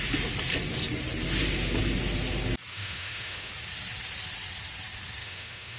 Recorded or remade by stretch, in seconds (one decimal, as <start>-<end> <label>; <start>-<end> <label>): 0.0-2.7 recorded; 2.7-3.5 remade; 3.5-5.2 recorded; 5.2-5.8 remade